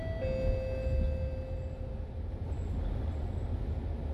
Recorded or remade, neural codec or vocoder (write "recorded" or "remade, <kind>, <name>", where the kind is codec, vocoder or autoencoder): recorded